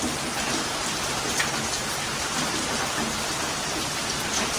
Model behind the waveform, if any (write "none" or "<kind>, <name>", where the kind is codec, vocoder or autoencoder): vocoder, BigVGAN v2